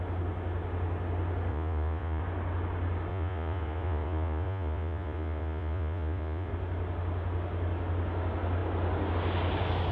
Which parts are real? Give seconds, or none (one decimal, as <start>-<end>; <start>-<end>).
0.0-1.5; 2.2-3.1; 6.5-9.9